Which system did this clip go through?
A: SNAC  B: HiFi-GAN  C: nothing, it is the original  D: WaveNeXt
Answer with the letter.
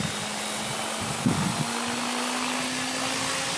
C